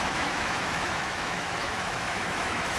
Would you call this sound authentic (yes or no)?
no